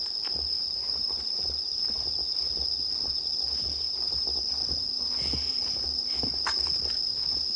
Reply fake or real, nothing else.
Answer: fake